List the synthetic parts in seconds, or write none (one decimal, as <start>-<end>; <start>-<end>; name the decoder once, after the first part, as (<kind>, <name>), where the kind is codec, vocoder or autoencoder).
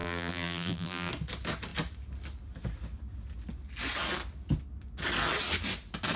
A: 0.0-1.1 (vocoder, BigVGAN v2)